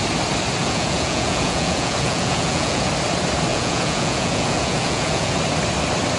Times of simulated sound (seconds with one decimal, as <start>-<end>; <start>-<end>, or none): 0.6-2.9; 3.5-5.4